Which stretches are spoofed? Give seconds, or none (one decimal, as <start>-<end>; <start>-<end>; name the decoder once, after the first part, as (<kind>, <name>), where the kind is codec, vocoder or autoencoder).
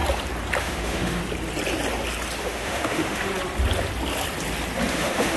0.6-1.2 (autoencoder, DAC-VAE); 2.4-3.3; 4.9-5.4